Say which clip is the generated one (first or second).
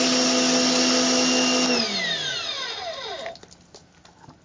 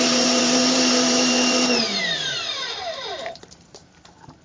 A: second